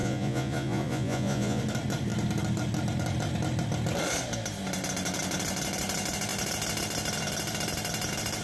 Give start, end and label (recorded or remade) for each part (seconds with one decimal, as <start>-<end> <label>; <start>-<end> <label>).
0.0-1.6 remade; 1.6-8.4 recorded